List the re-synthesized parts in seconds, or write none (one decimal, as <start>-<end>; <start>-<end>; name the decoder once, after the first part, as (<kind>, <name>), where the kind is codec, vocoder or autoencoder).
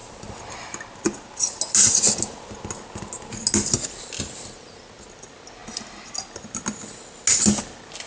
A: none